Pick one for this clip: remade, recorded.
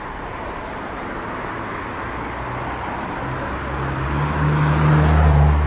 recorded